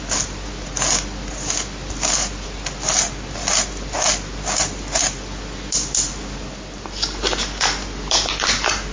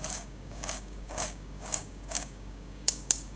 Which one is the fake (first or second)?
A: second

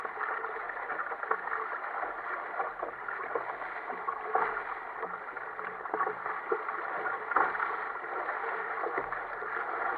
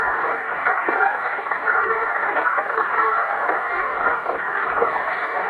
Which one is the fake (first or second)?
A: second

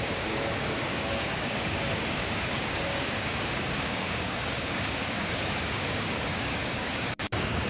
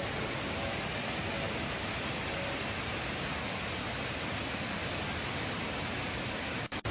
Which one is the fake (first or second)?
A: first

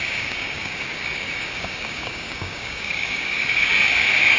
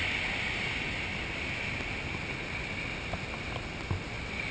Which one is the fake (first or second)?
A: first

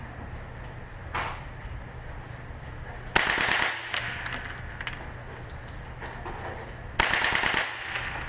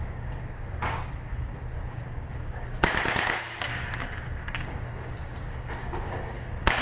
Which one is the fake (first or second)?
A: second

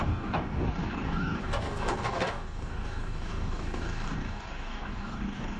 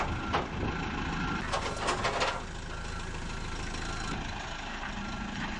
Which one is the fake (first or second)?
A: first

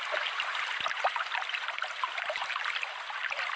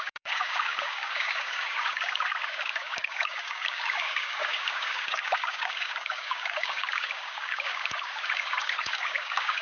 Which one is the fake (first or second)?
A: second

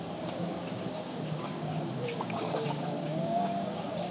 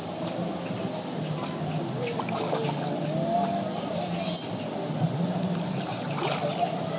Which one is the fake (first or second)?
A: first